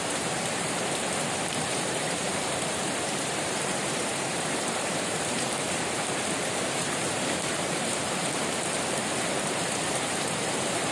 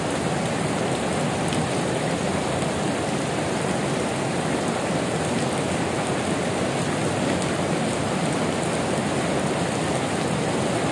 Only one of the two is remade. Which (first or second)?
first